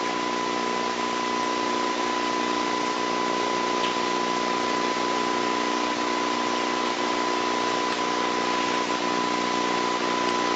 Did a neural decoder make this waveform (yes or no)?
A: no